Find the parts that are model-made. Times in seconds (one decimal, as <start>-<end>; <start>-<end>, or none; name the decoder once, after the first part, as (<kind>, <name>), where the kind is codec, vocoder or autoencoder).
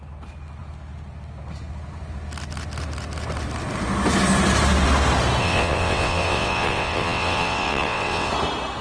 5.4-8.3 (vocoder, WaveNeXt)